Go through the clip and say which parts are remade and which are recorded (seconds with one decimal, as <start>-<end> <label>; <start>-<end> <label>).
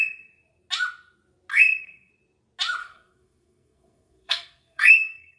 0.0-1.5 recorded; 1.5-2.1 remade; 2.1-2.8 recorded; 2.8-5.4 remade